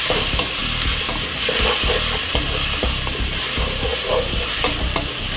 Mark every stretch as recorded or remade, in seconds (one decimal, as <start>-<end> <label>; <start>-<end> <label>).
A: 0.0-5.4 recorded